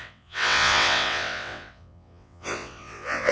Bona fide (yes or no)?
no